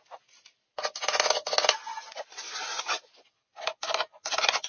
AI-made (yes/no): no